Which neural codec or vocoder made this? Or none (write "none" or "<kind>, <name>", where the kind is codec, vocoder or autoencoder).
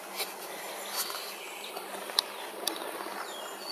none